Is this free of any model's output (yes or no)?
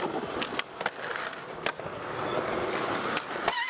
yes